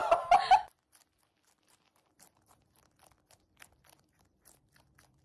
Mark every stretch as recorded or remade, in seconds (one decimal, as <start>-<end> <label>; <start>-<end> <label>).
0.0-5.2 remade